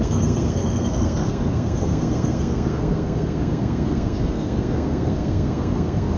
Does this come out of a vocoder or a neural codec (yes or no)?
yes